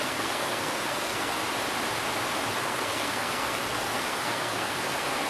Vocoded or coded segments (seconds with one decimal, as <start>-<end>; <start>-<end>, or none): 0.0-1.4; 2.6-5.3